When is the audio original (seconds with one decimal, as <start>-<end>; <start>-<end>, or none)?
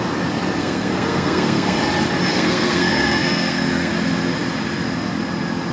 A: 0.0-0.6; 1.8-2.3; 3.9-5.7